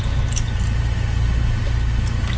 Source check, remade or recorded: recorded